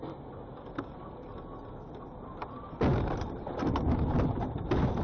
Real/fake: real